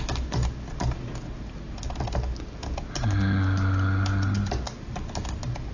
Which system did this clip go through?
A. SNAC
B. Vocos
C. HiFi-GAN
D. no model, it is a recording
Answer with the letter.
D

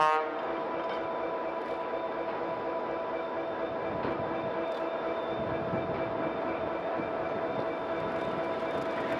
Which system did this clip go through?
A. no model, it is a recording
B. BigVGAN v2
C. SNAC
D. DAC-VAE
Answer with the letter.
A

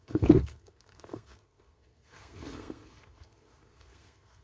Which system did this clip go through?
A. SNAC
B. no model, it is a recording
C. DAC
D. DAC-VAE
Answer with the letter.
A